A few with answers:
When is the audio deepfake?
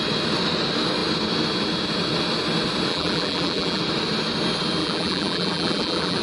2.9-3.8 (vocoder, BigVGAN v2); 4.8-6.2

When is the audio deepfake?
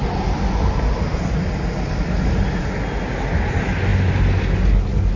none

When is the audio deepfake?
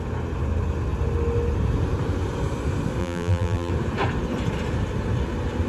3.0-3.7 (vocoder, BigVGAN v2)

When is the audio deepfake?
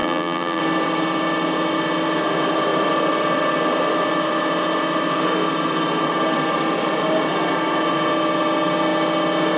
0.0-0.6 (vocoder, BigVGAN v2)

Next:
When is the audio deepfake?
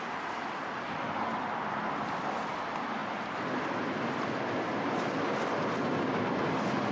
1.3-2.5 (vocoder, BigVGAN v2); 3.0-4.1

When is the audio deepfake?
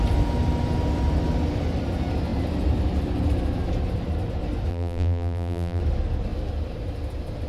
4.7-5.8 (vocoder, BigVGAN v2)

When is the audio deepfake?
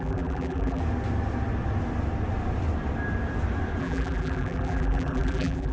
0.0-0.8 (vocoder, BigVGAN v2); 3.8-5.7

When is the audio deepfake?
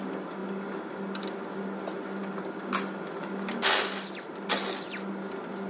none